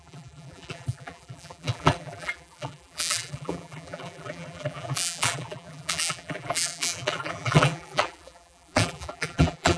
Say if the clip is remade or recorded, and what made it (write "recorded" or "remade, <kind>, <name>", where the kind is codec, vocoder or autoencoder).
remade, vocoder, BigVGAN v2